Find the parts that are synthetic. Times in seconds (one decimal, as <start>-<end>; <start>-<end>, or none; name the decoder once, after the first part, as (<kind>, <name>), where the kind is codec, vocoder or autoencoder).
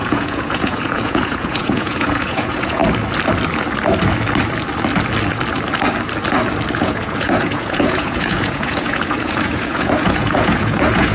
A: 0.0-2.8 (vocoder, Vocos); 6.8-11.1